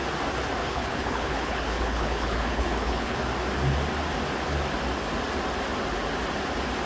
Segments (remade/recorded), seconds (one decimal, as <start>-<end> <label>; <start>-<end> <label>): 0.0-0.6 recorded; 0.6-3.2 remade; 3.2-6.9 recorded